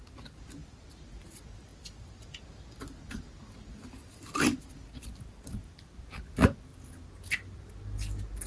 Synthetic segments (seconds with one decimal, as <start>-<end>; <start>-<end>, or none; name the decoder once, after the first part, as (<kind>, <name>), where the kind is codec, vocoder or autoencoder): none